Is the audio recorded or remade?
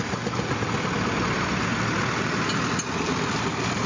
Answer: recorded